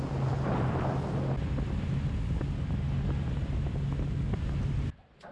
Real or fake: real